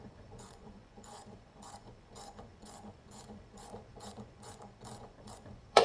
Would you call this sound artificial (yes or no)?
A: yes